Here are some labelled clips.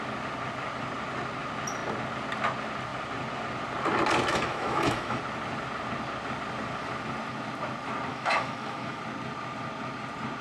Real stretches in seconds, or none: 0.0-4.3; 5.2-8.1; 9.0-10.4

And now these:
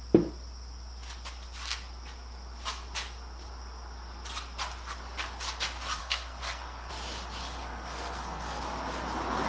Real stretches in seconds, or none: 0.0-6.0; 6.9-7.4; 8.6-9.5